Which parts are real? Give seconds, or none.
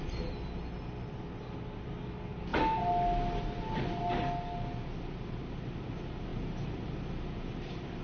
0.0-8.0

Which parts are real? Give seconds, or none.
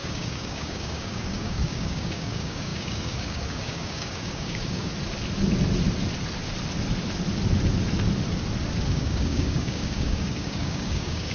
4.9-8.9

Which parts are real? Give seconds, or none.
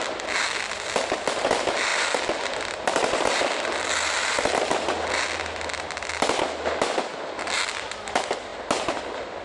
0.0-9.4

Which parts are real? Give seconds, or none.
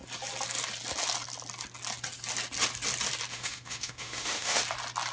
0.0-3.3; 4.6-5.1